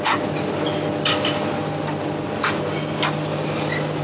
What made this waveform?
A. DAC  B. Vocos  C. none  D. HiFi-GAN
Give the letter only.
C